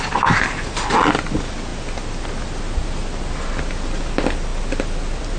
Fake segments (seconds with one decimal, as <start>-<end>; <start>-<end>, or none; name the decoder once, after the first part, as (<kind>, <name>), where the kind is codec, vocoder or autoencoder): none